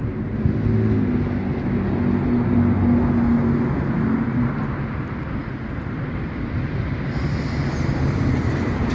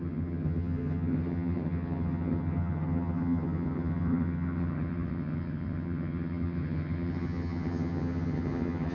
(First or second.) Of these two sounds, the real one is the first